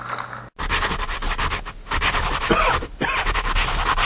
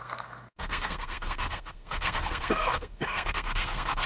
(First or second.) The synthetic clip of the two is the second